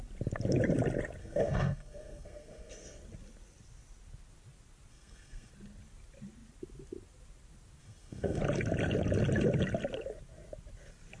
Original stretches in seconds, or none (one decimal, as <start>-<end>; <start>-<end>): 0.0-1.2; 3.0-4.9; 5.5-7.8; 8.4-11.2